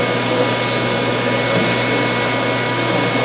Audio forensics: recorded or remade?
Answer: recorded